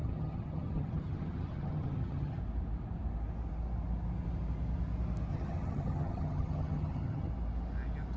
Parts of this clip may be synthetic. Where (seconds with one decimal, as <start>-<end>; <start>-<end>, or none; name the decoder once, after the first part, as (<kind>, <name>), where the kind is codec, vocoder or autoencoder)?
0.0-2.4 (vocoder, HiFi-GAN); 5.3-7.3